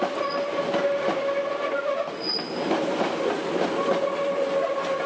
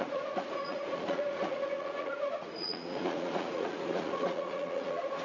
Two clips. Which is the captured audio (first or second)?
first